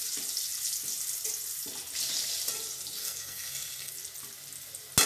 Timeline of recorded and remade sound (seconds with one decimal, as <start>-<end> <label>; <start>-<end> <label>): 0.0-3.0 recorded; 3.0-3.9 remade; 3.9-5.1 recorded